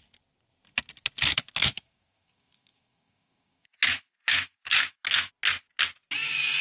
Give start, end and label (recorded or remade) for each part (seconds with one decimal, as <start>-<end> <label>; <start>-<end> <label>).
0.0-1.3 recorded; 1.3-5.3 remade; 5.3-6.6 recorded

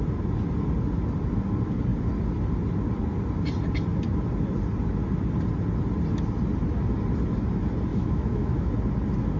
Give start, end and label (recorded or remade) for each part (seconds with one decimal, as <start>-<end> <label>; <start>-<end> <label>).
0.0-7.9 recorded; 7.9-8.7 remade; 8.7-9.4 recorded

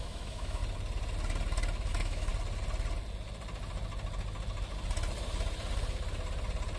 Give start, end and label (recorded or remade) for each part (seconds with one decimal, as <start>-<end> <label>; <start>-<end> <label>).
0.0-0.6 remade; 0.6-1.9 recorded; 1.9-2.3 remade; 2.3-6.8 recorded